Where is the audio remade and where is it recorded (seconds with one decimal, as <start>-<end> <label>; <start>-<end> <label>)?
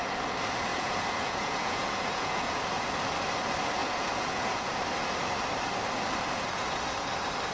0.0-0.7 recorded; 0.7-2.6 remade; 2.6-3.8 recorded; 3.8-4.8 remade; 4.8-7.5 recorded